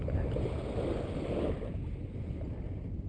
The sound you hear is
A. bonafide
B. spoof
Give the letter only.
A